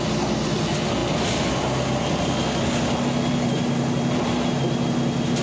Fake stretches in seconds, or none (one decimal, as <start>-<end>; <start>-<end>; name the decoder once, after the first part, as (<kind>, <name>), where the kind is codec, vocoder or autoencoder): none